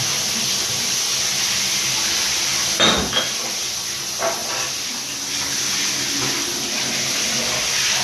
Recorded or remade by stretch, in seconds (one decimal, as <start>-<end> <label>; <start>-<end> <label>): 0.0-8.0 recorded